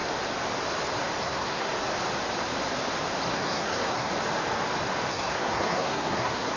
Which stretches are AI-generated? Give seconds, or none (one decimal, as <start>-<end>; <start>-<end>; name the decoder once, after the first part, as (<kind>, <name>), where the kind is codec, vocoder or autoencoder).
1.2-1.7 (codec, SNAC); 3.3-4.1; 5.1-6.6